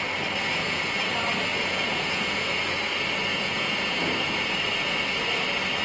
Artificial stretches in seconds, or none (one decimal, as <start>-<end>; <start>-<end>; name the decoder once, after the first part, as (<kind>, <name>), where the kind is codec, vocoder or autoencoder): 0.5-1.0 (vocoder, Vocos); 1.5-2.6; 3.3-4.6